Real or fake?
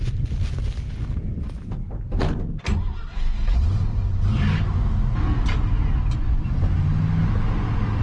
real